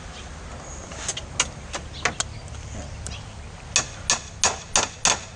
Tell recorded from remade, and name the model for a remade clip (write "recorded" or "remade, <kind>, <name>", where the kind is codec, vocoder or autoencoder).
recorded